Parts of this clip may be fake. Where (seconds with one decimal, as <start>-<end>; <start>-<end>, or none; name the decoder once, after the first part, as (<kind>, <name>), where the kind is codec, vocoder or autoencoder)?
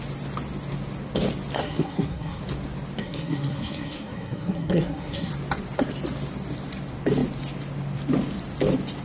1.6-2.4 (codec, SNAC); 3.0-5.3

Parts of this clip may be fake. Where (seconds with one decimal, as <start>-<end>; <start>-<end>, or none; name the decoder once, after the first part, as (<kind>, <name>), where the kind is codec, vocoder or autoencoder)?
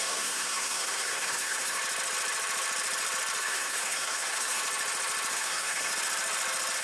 0.0-1.8 (codec, SNAC); 3.4-4.6; 5.3-5.9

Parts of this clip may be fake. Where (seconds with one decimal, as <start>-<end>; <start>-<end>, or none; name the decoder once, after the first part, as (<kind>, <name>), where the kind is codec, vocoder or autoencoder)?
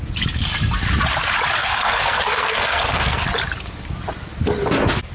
1.6-3.2 (codec, SNAC)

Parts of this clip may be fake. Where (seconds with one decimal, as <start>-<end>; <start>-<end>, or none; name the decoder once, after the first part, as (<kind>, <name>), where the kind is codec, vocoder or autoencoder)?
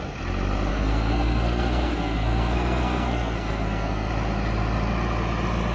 0.7-4.1 (codec, SNAC)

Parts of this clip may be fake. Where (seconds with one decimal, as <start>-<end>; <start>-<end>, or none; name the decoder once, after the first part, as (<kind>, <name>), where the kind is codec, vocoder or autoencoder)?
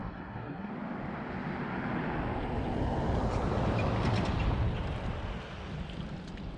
0.0-0.7 (codec, SNAC)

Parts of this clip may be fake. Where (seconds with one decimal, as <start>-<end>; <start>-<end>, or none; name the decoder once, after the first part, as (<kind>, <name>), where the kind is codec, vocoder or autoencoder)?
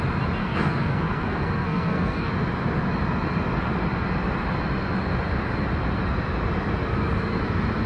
0.4-2.3 (codec, SNAC)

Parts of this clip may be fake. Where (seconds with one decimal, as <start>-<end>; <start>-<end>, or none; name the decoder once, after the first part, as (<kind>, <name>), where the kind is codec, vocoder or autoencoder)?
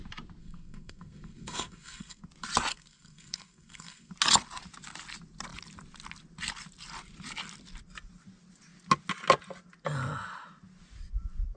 0.4-2.2 (codec, SNAC); 2.7-4.1